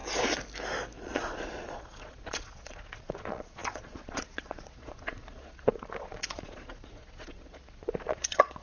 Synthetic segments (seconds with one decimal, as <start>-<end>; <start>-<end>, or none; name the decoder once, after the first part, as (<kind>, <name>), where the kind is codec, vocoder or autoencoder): 1.0-8.6 (vocoder, Vocos)